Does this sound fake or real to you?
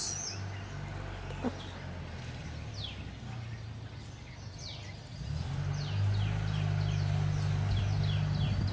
real